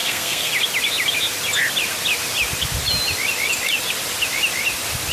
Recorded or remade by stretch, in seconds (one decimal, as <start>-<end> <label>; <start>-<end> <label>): 0.0-0.5 remade; 0.5-5.1 recorded